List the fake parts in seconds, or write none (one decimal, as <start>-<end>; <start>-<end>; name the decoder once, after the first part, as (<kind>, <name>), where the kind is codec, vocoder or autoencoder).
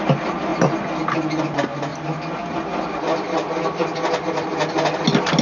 none